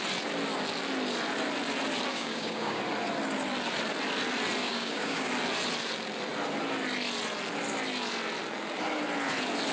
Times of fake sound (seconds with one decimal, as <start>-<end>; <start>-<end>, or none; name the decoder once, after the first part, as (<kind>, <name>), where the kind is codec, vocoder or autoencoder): 2.1-2.8 (codec, DAC); 4.6-5.3